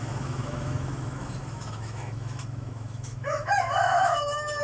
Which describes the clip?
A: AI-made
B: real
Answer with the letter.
A